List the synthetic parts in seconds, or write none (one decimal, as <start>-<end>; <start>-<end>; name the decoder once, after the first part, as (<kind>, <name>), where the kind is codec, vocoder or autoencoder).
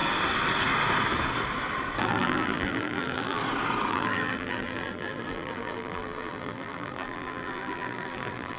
2.0-3.4 (vocoder, BigVGAN v2); 3.9-8.6